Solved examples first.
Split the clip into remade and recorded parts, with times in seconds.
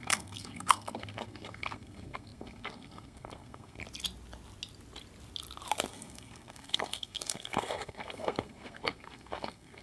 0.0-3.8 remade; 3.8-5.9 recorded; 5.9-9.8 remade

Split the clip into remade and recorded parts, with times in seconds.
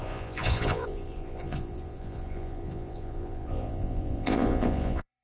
0.0-5.2 remade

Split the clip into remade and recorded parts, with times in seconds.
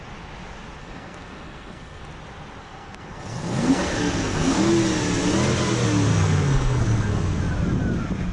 0.0-0.8 recorded; 0.8-2.0 remade; 2.0-2.6 recorded; 2.6-4.7 remade; 4.7-6.1 recorded; 6.1-7.4 remade; 7.4-8.3 recorded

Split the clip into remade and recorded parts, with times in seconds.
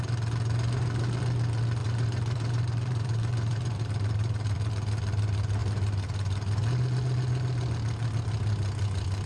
0.0-1.8 recorded; 1.8-4.7 remade; 4.7-9.3 recorded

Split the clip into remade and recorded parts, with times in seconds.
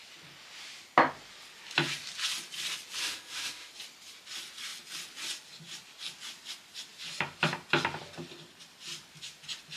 0.0-3.0 recorded; 3.0-3.7 remade; 3.7-9.8 recorded